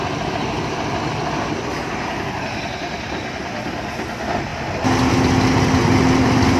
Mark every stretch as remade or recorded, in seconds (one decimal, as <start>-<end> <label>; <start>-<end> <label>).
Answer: 0.0-6.6 recorded